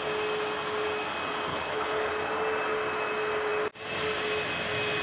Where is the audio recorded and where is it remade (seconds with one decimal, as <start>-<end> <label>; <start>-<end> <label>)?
0.0-1.5 recorded; 1.5-2.1 remade; 2.1-5.0 recorded